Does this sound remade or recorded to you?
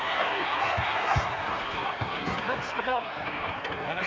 remade